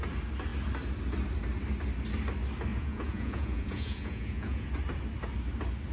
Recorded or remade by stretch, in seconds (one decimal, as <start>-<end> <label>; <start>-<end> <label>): 0.0-2.7 recorded; 2.7-4.7 remade; 4.7-5.9 recorded